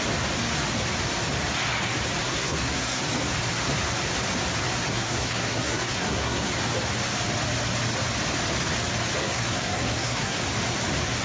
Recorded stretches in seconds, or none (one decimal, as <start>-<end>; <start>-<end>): 0.0-2.2; 3.0-4.9; 6.5-9.2; 10.4-11.2